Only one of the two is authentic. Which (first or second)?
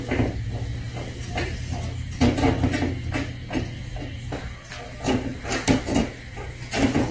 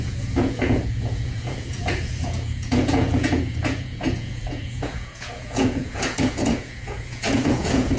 first